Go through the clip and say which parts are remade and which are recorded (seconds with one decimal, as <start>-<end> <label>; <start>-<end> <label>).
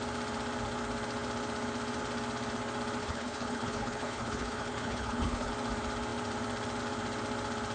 0.0-3.0 recorded; 3.0-5.5 remade; 5.5-7.7 recorded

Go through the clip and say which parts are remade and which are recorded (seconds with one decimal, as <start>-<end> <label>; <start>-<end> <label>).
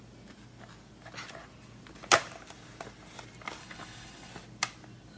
0.0-3.6 recorded; 3.6-4.3 remade; 4.3-5.2 recorded